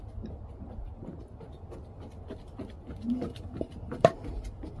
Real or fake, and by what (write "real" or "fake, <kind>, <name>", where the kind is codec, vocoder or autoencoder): real